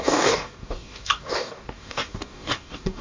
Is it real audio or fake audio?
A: fake